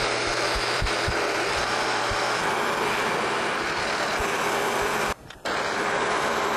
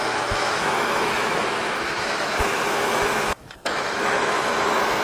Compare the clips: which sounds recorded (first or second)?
first